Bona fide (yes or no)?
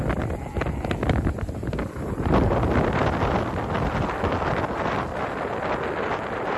yes